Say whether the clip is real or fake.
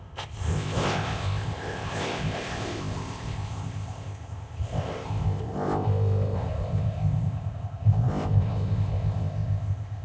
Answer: fake